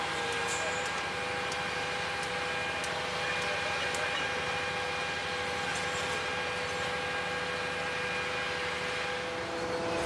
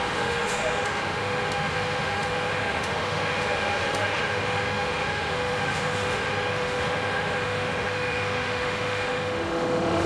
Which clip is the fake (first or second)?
second